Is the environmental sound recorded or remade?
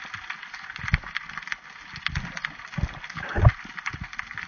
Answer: recorded